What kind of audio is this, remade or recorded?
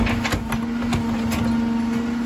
recorded